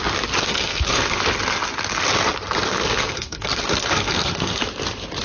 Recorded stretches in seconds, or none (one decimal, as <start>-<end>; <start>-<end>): 0.0-0.4; 1.2-2.7; 4.6-5.2

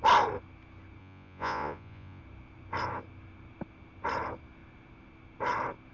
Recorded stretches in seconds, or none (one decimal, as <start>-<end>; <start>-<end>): 0.0-1.0; 2.2-5.9